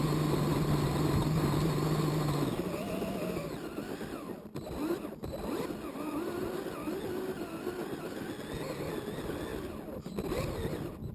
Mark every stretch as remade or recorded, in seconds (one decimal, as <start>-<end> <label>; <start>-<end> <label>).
0.0-11.1 recorded